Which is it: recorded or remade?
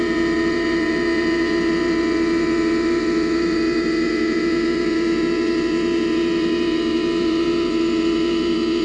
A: remade